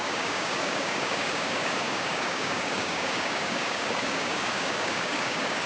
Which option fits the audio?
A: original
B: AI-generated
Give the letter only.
B